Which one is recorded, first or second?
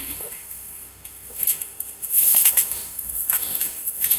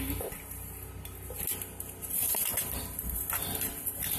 second